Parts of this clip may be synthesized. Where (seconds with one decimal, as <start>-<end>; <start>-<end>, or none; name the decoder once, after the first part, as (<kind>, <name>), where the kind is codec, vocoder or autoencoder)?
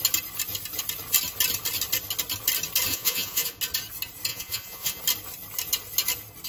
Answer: 2.9-3.6 (vocoder, Vocos); 4.3-5.0